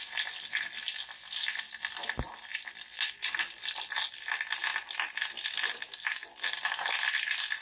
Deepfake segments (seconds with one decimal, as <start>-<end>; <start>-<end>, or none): none